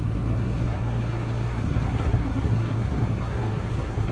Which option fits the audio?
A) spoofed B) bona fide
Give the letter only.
A